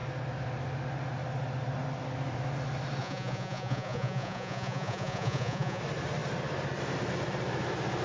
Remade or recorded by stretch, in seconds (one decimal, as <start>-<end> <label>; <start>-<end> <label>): 0.0-3.0 recorded; 3.0-5.8 remade; 5.8-8.0 recorded